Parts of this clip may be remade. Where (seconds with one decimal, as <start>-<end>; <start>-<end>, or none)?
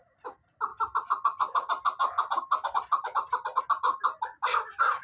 none